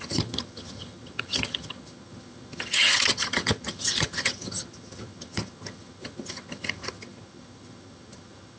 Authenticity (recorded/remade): remade